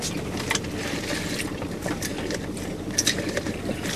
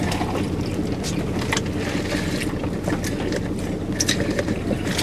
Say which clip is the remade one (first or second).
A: first